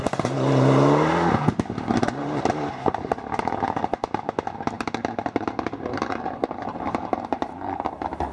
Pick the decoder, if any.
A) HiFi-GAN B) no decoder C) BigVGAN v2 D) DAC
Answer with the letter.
B